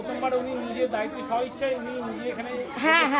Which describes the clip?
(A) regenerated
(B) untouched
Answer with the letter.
B